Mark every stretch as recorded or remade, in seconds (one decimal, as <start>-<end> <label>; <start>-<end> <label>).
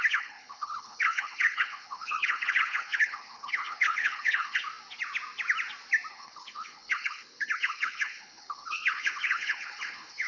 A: 0.0-4.7 remade; 4.7-6.1 recorded; 6.1-10.3 remade